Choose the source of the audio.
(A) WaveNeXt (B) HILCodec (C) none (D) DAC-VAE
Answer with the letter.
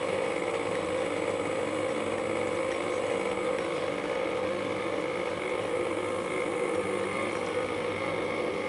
C